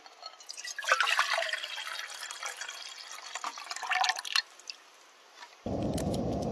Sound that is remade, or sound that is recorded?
recorded